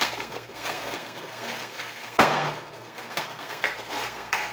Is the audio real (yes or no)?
no